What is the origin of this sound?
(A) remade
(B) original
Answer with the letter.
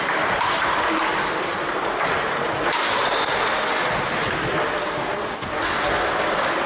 B